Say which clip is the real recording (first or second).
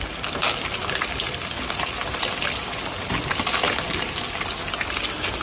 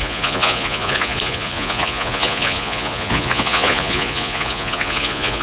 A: first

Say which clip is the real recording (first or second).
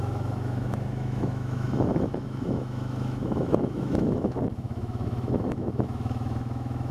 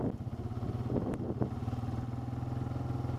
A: second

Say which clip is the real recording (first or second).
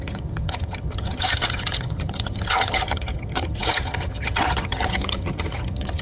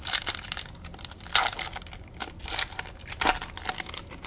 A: second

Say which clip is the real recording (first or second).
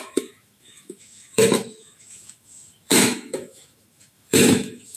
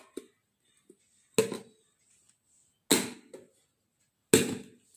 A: second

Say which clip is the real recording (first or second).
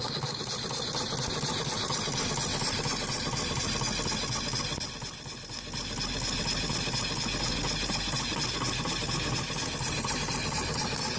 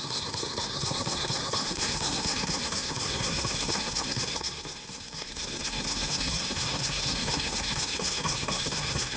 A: first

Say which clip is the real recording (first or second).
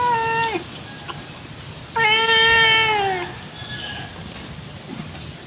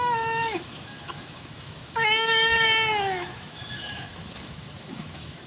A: first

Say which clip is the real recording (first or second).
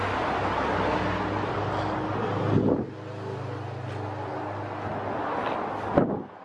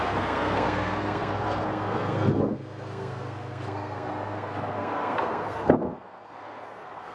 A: first